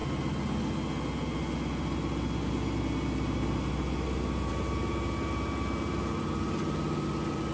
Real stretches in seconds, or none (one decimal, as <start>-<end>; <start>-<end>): 0.0-7.5